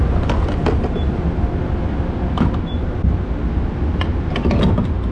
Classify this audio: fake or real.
real